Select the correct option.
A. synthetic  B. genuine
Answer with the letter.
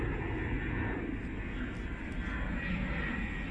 B